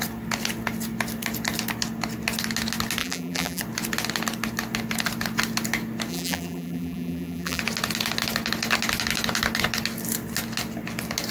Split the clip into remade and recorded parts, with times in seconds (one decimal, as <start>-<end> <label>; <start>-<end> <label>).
0.0-3.0 recorded; 3.0-3.6 remade; 3.6-6.1 recorded; 6.1-7.6 remade; 7.6-11.3 recorded